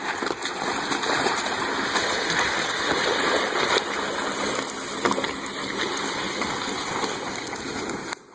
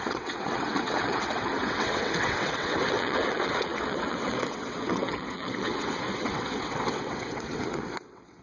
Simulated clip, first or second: second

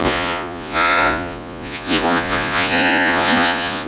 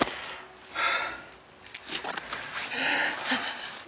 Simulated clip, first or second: first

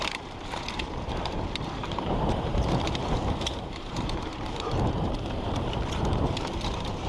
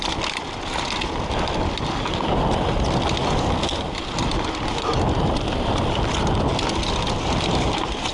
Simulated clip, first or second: first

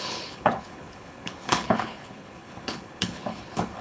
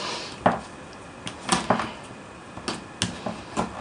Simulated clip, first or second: first